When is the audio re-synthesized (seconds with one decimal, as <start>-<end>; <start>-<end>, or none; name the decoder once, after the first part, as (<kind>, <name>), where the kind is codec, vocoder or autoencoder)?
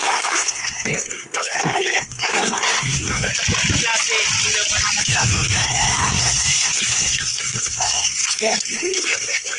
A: 0.0-3.3 (codec, SNAC); 5.0-9.6